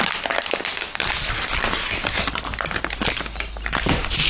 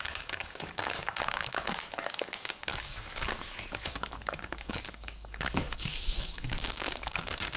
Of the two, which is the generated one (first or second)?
second